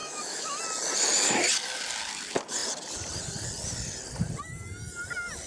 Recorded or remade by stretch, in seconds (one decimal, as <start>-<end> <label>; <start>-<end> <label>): 0.0-0.6 remade; 0.6-5.5 recorded